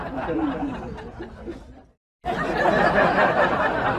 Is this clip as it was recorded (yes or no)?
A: yes